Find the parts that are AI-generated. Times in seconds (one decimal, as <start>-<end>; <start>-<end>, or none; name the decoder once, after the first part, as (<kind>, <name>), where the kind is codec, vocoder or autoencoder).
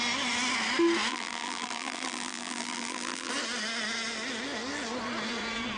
1.1-3.3 (vocoder, BigVGAN v2)